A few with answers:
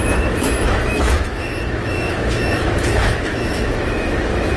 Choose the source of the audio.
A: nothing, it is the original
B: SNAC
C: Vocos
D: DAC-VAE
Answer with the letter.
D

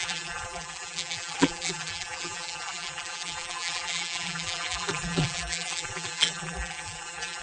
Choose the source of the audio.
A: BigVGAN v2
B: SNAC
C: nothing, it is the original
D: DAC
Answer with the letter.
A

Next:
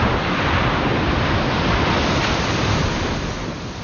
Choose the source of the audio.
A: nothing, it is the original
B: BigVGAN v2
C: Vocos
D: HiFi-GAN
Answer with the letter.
A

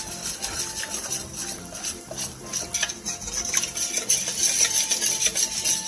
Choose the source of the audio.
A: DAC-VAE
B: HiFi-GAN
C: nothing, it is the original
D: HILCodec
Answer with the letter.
C